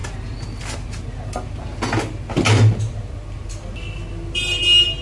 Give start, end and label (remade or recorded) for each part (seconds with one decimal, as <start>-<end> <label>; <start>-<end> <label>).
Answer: 0.0-5.0 recorded